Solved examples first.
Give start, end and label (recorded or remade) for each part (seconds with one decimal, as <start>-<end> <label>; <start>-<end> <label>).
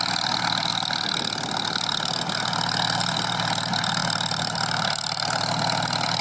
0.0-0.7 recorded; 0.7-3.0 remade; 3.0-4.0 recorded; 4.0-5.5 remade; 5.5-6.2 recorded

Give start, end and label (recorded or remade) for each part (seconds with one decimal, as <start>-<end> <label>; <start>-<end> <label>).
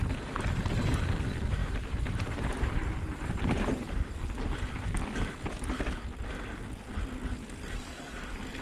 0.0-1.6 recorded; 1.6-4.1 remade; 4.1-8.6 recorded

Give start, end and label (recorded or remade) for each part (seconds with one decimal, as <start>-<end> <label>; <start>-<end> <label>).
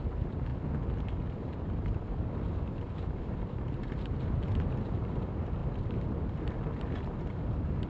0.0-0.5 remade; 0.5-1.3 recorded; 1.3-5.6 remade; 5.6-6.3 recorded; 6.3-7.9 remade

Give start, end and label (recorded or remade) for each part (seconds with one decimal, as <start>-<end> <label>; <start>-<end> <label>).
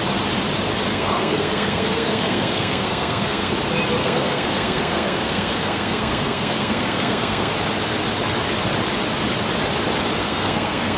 0.0-0.9 recorded; 0.9-3.5 remade; 3.5-4.0 recorded; 4.0-7.5 remade; 7.5-10.2 recorded; 10.2-11.0 remade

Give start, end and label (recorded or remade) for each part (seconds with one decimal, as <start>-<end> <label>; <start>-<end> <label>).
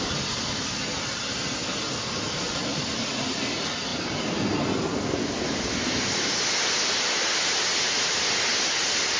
0.0-9.2 recorded